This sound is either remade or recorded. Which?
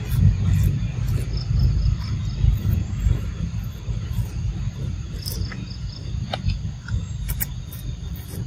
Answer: recorded